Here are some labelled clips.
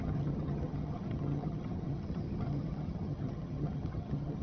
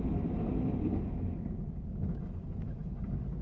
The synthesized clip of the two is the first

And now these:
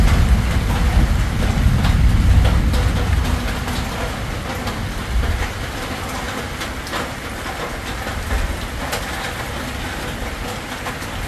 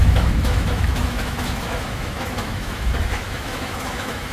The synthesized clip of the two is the second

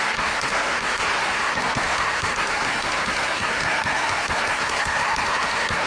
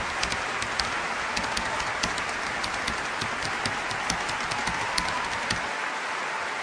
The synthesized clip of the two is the first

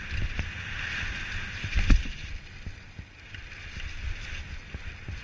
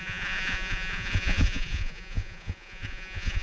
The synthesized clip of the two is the second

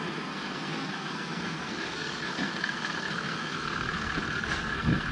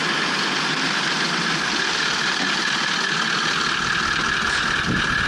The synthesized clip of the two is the first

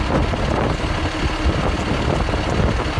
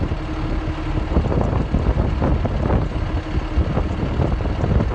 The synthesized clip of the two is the first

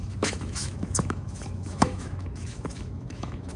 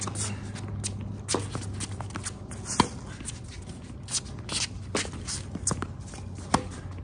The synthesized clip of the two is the first